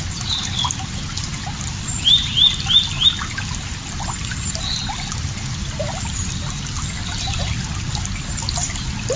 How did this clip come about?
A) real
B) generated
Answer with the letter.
A